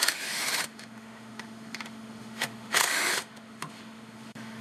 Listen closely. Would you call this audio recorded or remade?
remade